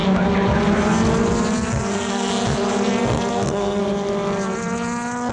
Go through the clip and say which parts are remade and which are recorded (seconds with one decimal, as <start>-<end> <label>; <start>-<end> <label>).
0.0-1.9 recorded; 1.9-2.3 remade; 2.3-3.3 recorded; 3.3-3.8 remade; 3.8-5.3 recorded